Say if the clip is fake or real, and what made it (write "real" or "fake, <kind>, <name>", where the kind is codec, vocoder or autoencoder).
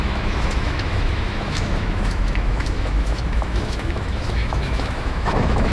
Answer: fake, autoencoder, DAC-VAE